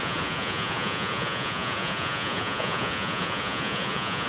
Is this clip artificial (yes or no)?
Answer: yes